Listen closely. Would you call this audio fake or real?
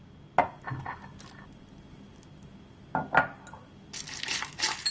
real